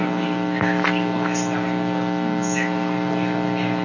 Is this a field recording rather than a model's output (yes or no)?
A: yes